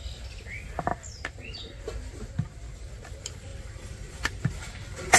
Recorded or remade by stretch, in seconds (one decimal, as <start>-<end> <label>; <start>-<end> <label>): 0.0-3.5 recorded; 3.5-4.4 remade; 4.4-5.2 recorded